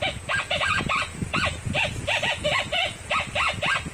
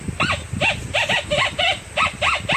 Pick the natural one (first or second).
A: second